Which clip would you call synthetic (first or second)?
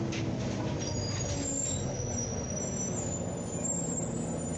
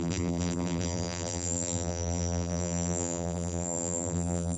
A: second